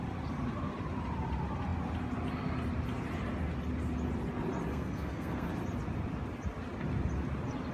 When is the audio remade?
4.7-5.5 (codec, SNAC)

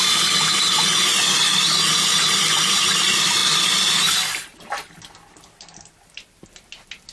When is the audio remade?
none

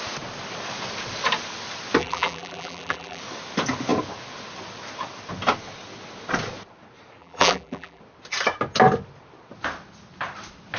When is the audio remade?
2.0-3.2 (vocoder, BigVGAN v2); 7.2-8.0